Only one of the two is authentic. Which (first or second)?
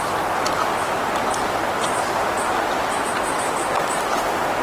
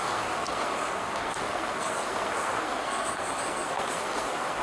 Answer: first